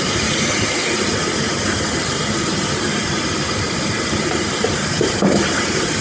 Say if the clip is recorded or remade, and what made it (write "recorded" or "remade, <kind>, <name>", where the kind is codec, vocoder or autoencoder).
remade, vocoder, BigVGAN v2